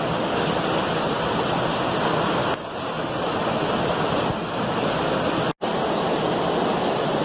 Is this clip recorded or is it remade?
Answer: recorded